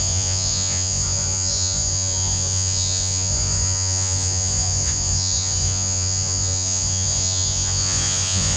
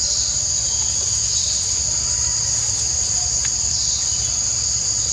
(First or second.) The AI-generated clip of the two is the first